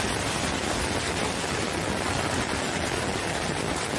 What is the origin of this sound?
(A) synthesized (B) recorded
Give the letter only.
B